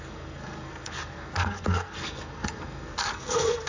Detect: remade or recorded remade